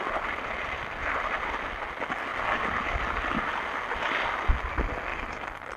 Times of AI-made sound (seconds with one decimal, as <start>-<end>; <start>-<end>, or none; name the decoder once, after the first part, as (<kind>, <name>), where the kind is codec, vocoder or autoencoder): 1.0-1.8 (vocoder, BigVGAN v2); 5.1-5.8

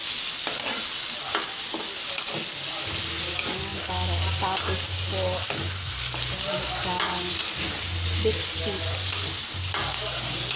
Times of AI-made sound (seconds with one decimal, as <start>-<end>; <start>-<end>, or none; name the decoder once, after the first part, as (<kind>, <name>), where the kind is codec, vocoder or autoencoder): none

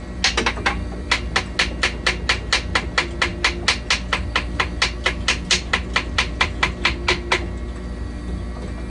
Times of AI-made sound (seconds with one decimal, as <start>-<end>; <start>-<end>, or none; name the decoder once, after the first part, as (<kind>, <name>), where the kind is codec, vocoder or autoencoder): none

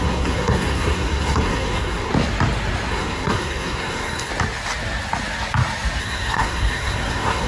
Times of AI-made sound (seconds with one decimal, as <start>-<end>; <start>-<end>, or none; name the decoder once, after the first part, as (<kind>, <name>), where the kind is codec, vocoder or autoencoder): 0.0-2.1 (codec, SNAC); 2.9-4.3; 6.0-7.5

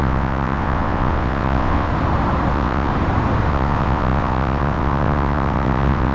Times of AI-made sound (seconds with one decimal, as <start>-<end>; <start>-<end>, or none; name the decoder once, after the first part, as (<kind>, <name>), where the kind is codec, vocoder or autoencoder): 0.0-1.9 (vocoder, WaveNeXt); 2.5-2.9; 3.5-6.1

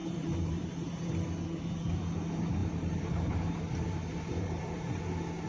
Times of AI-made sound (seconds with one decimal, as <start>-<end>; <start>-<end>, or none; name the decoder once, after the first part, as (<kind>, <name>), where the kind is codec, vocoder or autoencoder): 0.0-1.2 (vocoder, BigVGAN v2); 2.6-5.0

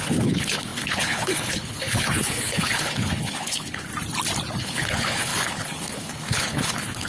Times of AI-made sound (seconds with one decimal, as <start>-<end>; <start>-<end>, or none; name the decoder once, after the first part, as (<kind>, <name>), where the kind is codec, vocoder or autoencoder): 0.0-3.9 (codec, HILCodec); 4.6-7.1

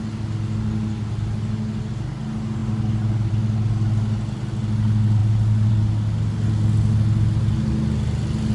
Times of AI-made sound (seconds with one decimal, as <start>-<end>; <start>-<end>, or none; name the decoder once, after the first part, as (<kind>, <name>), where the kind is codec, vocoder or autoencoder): none